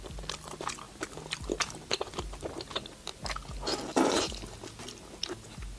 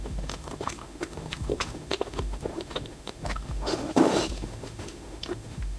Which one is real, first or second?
first